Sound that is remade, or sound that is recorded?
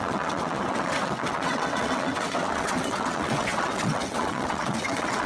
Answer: remade